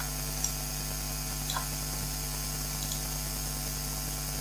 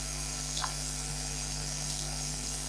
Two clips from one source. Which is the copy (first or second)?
second